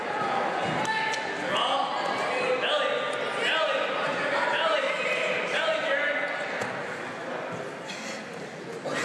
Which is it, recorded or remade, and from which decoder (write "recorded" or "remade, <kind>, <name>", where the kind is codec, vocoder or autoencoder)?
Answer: recorded